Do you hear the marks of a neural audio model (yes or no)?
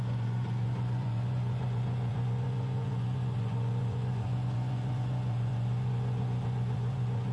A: yes